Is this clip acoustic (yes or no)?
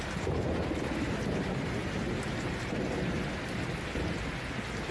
yes